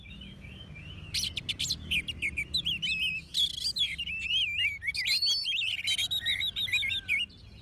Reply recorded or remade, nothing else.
recorded